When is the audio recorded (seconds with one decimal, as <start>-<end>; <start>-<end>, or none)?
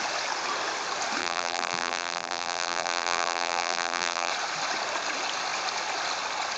0.0-1.2; 4.3-6.6